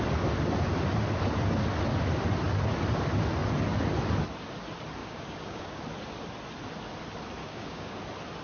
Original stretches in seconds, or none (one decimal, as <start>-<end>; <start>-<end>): 0.0-5.0; 5.8-7.4; 8.0-8.4